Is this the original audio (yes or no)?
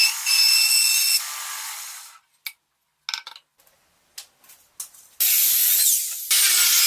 yes